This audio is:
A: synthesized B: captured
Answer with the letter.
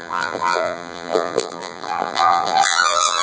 A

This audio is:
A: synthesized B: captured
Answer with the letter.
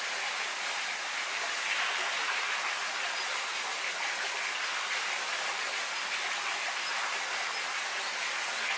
B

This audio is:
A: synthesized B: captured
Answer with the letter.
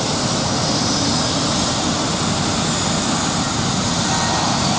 B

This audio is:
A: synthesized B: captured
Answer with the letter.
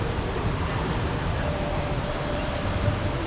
A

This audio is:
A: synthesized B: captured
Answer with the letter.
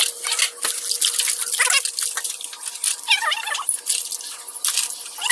B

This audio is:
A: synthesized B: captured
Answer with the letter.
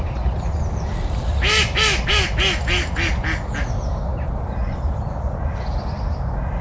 B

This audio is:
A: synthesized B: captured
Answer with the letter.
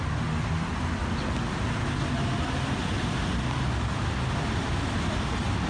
B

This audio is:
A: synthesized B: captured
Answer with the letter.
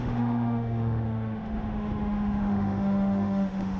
A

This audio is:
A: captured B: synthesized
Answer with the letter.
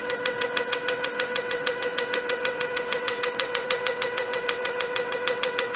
B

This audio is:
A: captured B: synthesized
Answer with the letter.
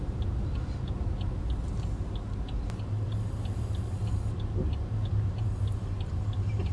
A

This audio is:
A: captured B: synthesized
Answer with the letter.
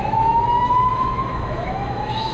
B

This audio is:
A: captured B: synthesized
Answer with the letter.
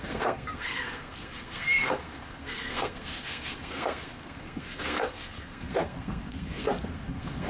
B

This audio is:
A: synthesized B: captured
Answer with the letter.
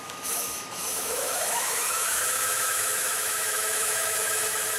A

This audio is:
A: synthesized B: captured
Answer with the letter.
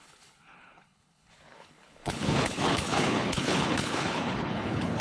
A